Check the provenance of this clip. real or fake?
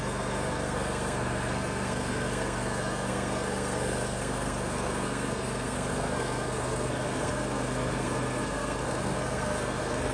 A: fake